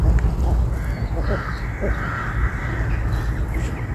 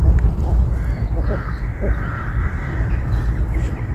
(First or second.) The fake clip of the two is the second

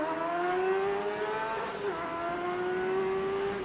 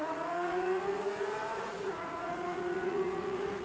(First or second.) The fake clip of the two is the second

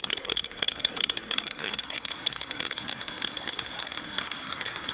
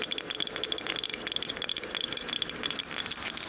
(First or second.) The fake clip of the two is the first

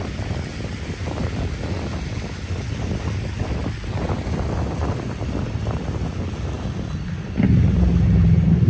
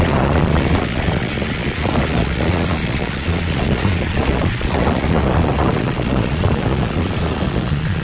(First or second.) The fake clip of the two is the second